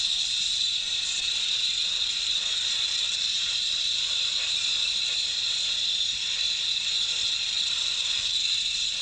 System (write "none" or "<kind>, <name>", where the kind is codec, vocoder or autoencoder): vocoder, BigVGAN v2